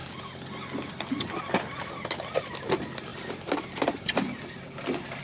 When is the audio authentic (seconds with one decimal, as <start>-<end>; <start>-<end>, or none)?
0.0-5.2